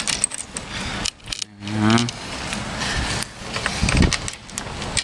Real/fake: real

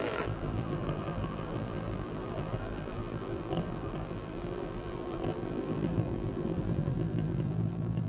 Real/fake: fake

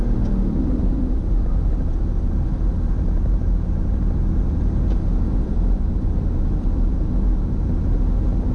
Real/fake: fake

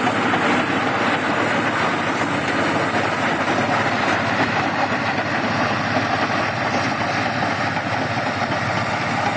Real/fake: fake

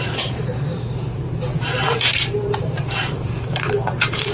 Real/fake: fake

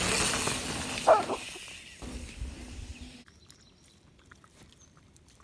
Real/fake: real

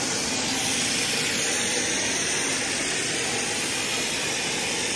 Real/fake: real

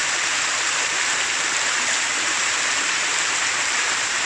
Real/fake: fake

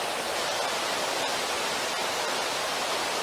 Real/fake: real